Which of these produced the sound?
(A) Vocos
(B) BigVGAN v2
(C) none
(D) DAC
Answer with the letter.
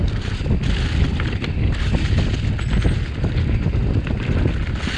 C